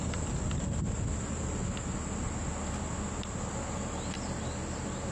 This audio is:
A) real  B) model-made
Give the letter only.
A